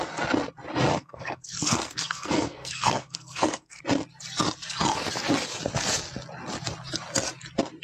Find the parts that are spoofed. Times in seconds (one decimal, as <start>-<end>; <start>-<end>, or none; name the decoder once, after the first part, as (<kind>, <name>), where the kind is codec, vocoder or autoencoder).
0.9-3.8 (codec, SNAC)